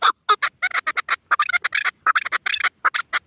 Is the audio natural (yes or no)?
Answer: yes